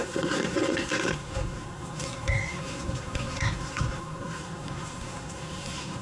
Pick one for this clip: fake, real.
fake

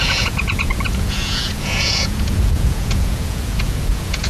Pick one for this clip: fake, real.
fake